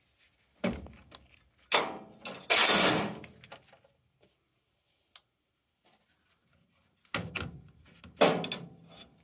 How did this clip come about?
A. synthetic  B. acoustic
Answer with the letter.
B